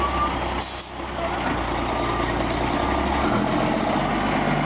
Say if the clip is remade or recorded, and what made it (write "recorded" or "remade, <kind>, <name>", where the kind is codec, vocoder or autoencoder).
recorded